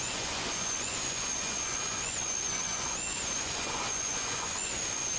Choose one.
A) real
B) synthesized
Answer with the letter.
B